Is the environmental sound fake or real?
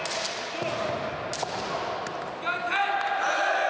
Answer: real